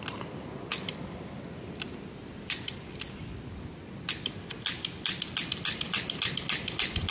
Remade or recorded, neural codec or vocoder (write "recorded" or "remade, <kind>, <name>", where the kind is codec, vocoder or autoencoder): recorded